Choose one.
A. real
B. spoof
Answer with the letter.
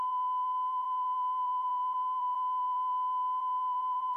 B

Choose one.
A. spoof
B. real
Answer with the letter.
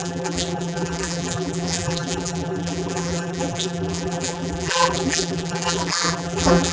A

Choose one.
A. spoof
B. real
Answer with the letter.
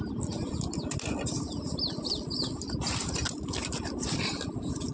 B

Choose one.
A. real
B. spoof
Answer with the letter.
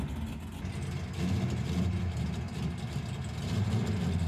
A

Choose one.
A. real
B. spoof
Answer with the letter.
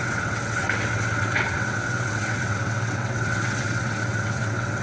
B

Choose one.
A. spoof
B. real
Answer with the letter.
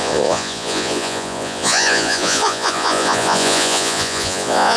A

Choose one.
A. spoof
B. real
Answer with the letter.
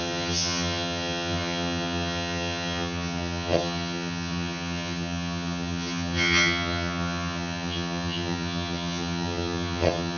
A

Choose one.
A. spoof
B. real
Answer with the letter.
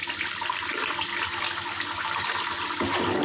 B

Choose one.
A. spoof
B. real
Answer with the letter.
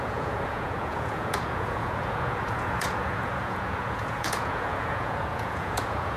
A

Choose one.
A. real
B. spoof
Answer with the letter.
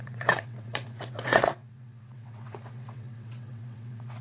B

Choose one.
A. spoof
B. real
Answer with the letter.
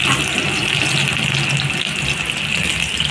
B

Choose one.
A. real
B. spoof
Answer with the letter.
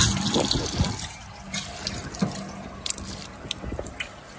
A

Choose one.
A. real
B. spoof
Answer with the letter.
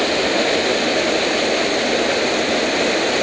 A